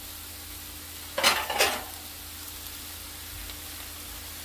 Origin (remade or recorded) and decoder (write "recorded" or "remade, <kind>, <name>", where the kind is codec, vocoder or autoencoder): recorded